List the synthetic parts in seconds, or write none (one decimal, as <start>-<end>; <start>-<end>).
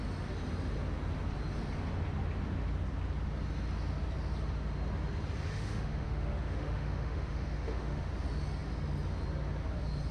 5.5-8.1